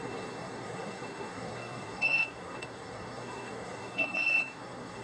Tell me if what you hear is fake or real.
fake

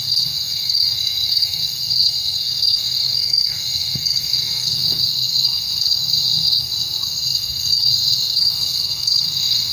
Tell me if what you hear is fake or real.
fake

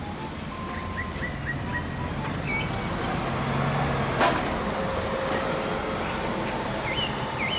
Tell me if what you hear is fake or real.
real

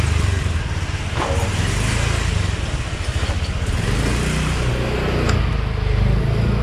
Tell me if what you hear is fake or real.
real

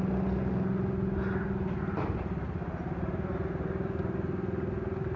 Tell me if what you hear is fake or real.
real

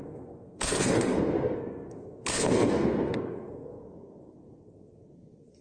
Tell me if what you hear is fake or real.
fake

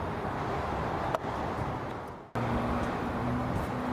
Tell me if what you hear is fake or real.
real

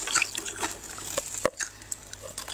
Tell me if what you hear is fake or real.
real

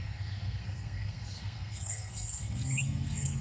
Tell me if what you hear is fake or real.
fake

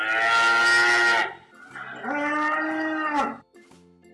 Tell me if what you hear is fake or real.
real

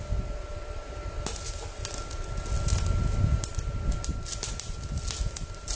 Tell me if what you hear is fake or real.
real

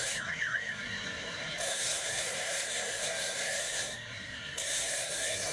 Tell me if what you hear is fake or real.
fake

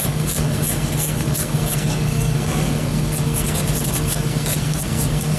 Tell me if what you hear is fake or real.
fake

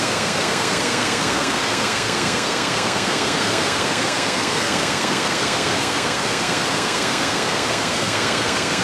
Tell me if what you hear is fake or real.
fake